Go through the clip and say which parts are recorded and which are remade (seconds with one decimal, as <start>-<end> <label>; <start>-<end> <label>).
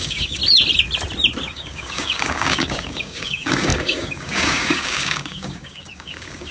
0.0-0.4 remade; 0.4-1.5 recorded; 1.5-6.5 remade